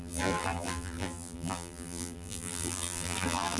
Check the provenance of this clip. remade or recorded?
remade